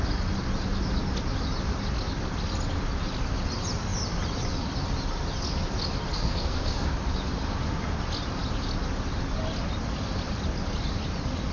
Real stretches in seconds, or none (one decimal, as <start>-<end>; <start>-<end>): 0.0-6.1; 6.9-11.5

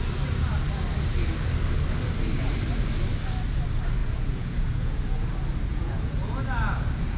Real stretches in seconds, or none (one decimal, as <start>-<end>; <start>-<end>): 0.0-4.0; 5.3-5.7; 6.2-7.2

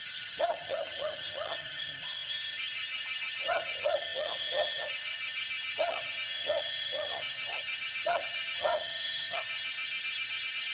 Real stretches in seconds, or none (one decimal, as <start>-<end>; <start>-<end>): none

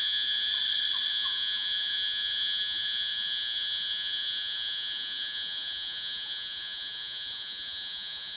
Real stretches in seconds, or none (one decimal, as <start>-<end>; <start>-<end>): 0.5-1.1

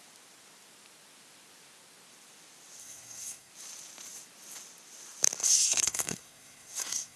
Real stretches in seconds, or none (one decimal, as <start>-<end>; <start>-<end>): 0.0-2.8; 3.5-5.4